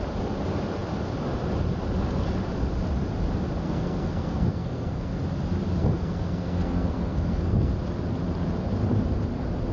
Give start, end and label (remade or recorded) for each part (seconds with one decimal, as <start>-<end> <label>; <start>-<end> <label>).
0.0-3.6 recorded; 3.6-5.2 remade; 5.2-5.8 recorded; 5.8-7.7 remade; 7.7-9.7 recorded